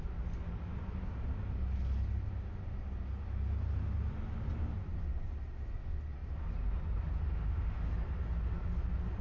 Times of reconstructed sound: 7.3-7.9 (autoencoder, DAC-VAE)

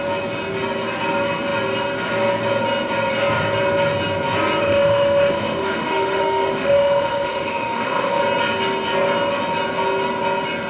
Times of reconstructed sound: 4.6-8.2 (autoencoder, DAC-VAE)